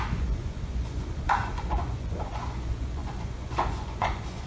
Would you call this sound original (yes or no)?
no